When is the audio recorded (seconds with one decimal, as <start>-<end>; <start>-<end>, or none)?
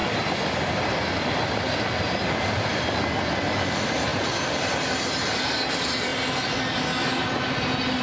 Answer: 0.0-8.0